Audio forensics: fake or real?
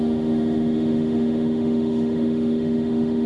fake